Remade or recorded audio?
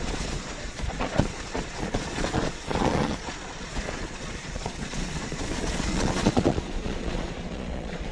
remade